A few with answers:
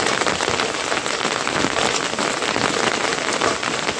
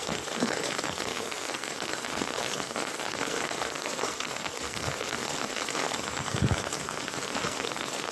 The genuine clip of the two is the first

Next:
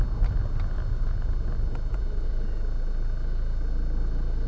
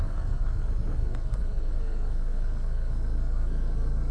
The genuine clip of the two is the first